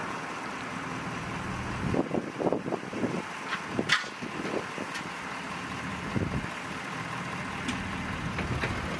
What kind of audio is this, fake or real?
real